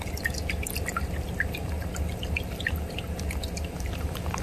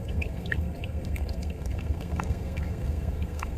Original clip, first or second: first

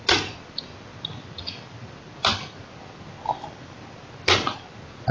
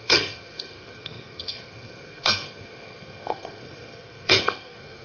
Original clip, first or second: first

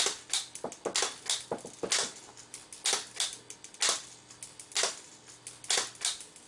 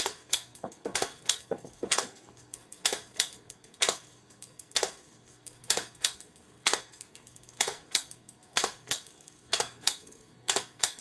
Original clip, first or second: first